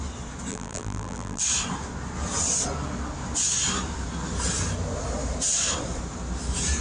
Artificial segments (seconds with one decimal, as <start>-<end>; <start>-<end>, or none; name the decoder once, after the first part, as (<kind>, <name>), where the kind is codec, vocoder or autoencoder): 0.5-1.4 (vocoder, BigVGAN v2)